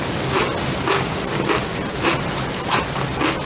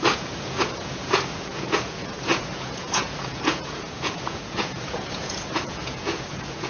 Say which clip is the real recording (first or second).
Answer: first